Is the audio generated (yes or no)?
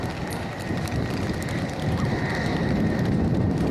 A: no